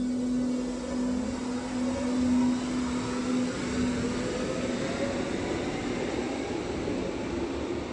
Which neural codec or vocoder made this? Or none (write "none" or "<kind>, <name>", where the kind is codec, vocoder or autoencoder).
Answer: none